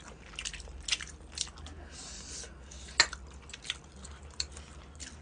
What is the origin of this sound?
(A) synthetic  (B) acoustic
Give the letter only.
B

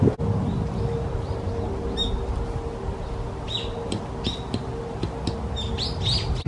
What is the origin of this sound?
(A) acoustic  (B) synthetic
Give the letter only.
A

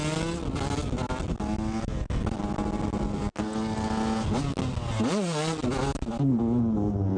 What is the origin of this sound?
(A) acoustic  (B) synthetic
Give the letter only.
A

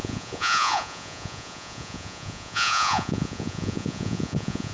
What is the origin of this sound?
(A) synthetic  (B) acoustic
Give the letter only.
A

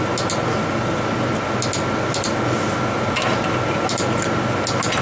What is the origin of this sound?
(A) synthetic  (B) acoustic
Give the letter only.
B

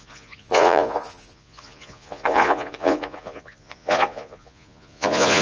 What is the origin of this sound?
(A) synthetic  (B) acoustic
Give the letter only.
A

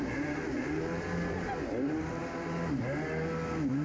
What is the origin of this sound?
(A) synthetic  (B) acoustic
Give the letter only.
B